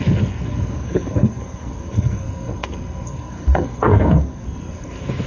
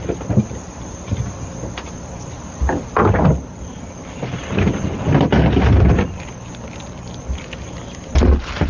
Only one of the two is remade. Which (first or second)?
first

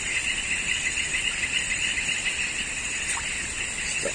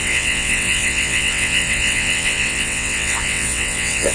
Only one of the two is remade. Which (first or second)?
second